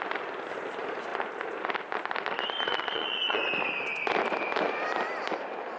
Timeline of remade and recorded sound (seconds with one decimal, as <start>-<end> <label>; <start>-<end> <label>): 0.0-2.7 recorded; 2.7-3.4 remade; 3.4-5.8 recorded